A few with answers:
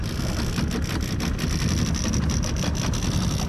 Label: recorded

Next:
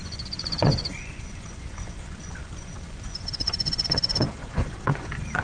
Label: remade